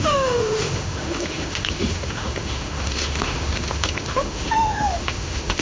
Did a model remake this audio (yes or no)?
yes